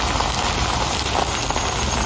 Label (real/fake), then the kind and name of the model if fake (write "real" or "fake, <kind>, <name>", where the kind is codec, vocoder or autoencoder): real